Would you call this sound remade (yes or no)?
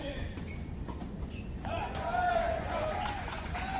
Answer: yes